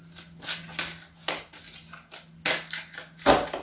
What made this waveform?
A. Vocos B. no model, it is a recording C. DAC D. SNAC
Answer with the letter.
B